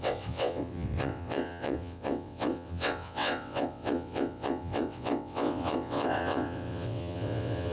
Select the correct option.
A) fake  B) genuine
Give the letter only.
A